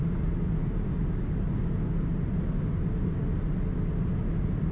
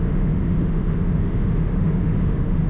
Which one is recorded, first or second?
first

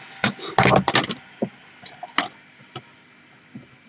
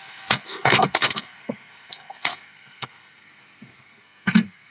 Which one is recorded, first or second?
first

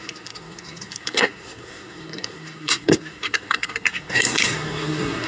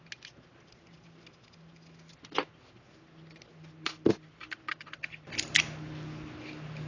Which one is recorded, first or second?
second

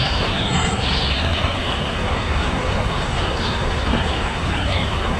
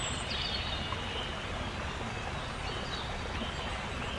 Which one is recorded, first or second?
second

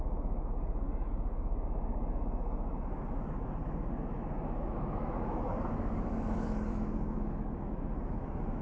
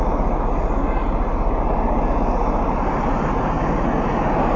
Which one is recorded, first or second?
second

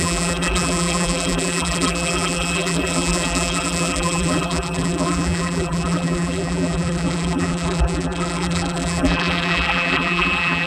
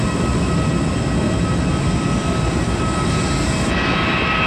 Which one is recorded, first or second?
second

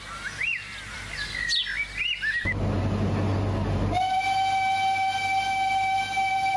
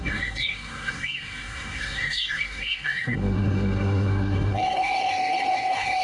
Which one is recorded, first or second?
first